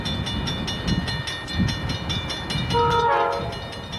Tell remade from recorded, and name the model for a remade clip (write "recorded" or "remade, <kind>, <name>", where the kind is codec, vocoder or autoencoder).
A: recorded